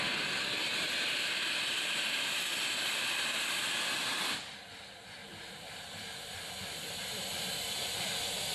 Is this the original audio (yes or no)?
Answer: no